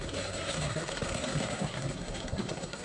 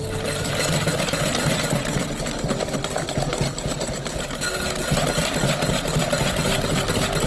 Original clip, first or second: second